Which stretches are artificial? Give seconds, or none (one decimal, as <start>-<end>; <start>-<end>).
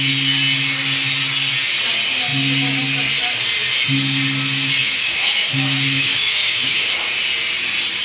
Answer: 4.8-7.1